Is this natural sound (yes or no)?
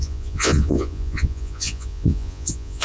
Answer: no